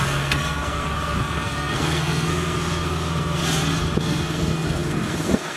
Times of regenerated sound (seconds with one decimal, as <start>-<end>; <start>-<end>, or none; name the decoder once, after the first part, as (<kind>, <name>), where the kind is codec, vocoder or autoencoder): 0.0-3.4 (codec, SNAC); 4.0-5.6